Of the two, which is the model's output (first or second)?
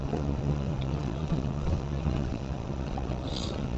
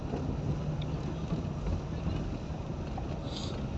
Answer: first